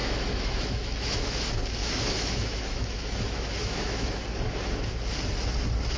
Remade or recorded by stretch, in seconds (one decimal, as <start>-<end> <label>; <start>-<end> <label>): 0.0-1.4 remade; 1.4-1.8 recorded; 1.8-4.2 remade; 4.2-6.0 recorded